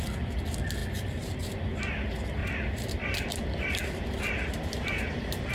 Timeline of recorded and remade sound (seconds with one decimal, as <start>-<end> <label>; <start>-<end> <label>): 0.0-2.4 recorded; 2.4-5.5 remade